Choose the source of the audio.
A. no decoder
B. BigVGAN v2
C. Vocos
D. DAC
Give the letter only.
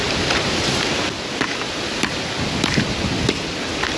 B